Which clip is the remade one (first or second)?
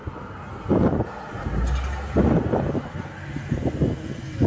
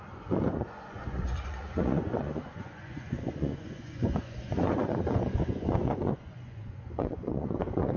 second